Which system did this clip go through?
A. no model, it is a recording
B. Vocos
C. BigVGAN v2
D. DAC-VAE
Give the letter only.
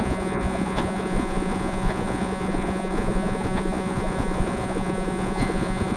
B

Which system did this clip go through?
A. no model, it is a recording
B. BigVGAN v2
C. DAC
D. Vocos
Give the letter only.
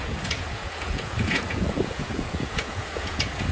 D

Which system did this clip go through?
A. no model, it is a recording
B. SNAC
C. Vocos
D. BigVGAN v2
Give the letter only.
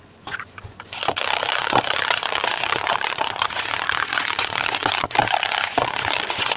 C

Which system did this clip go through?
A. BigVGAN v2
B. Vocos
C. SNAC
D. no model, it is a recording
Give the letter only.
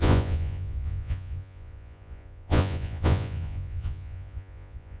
B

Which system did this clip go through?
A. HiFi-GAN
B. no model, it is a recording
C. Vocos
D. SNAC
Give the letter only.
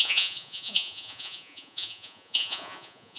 C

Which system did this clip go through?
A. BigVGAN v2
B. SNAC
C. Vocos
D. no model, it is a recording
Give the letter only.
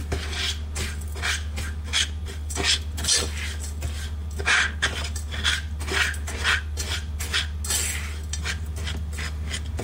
D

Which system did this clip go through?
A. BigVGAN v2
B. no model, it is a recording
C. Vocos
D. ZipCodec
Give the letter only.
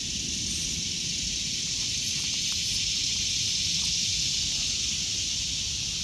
B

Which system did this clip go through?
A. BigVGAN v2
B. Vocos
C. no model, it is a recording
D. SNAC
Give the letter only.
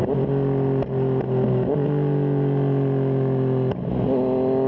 C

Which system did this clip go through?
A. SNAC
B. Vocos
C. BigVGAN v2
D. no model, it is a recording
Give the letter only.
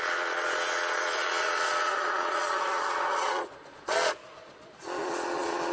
B